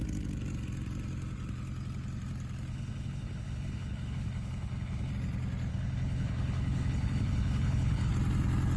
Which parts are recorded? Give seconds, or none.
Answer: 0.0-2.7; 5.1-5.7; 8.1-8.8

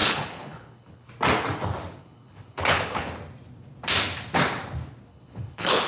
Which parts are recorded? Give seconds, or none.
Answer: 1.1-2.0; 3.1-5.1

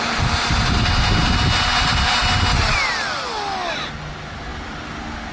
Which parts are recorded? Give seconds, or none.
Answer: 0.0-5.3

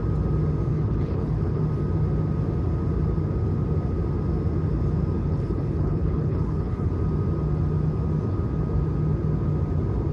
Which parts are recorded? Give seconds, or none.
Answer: 0.0-0.7; 1.6-5.2; 6.9-10.1